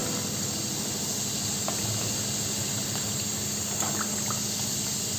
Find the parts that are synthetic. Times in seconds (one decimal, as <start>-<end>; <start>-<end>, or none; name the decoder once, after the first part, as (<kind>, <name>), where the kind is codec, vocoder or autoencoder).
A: 0.0-3.1 (vocoder, BigVGAN v2)

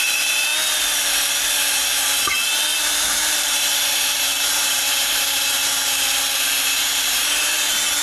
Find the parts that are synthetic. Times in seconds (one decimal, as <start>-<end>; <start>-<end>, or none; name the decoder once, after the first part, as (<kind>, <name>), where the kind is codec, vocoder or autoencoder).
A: 2.7-7.5 (vocoder, BigVGAN v2)